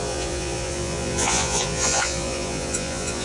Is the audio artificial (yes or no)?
yes